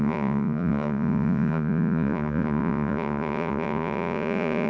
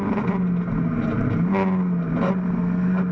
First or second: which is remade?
first